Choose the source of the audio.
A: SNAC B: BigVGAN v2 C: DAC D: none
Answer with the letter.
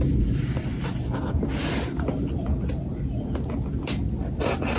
D